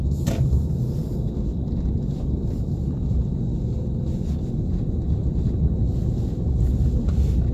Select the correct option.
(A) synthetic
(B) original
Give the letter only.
B